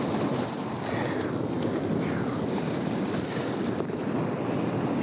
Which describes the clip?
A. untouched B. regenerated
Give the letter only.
A